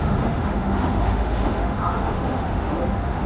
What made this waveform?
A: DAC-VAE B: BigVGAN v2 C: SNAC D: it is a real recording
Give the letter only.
A